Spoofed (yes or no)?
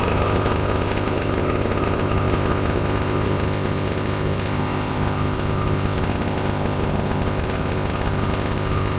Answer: yes